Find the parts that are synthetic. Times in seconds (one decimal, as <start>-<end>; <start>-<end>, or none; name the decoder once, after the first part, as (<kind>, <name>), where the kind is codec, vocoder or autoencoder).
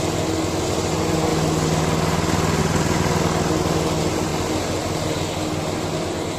none